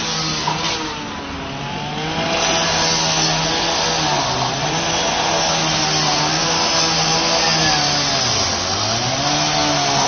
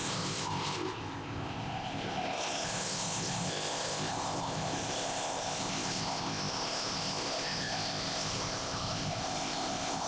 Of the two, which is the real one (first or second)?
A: first